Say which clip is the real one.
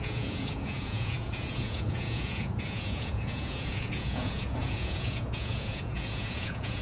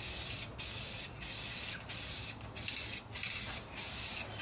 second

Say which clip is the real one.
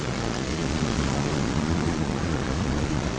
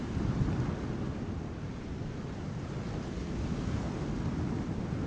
second